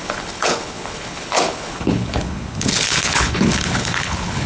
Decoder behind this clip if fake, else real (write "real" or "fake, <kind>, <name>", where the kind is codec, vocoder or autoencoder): fake, codec, HILCodec